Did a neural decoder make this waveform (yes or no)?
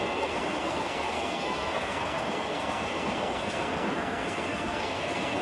yes